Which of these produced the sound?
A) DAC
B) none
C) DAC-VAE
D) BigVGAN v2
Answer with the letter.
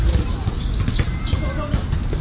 B